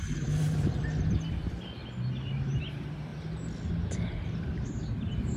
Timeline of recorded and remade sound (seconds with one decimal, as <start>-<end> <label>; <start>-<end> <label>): 0.0-1.8 remade; 1.8-2.5 recorded; 2.5-3.1 remade; 3.1-4.3 recorded; 4.3-5.4 remade